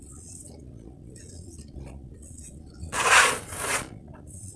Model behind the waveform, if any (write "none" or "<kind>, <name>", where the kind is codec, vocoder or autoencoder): vocoder, Vocos